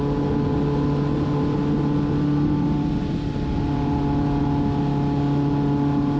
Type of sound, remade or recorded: recorded